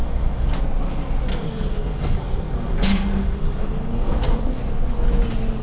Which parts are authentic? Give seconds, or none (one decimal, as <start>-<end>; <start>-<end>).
0.6-1.3; 4.6-5.6